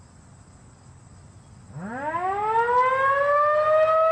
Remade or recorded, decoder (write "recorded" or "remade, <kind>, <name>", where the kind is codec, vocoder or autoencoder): recorded